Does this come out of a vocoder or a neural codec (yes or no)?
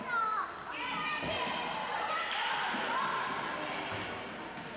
no